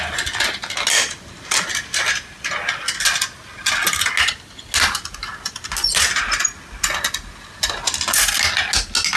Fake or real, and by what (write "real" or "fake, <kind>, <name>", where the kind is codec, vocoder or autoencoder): real